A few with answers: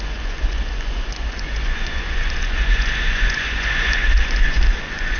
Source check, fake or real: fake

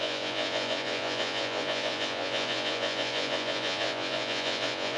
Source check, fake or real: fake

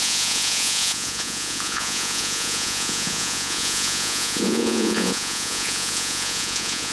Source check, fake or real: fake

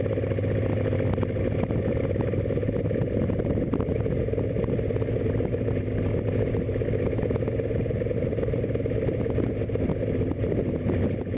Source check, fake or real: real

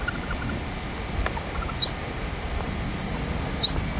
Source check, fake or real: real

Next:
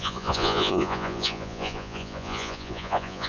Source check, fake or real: fake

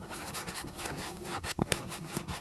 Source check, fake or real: fake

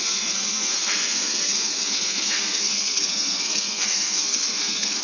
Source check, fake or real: fake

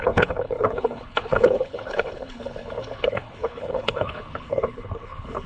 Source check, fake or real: fake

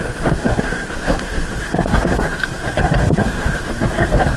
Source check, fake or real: fake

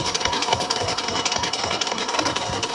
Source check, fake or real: fake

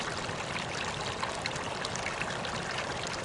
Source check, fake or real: fake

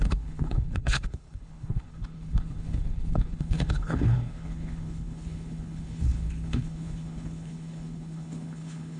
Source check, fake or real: fake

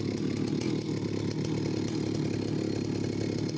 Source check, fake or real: real